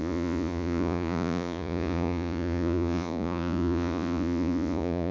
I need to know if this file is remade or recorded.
remade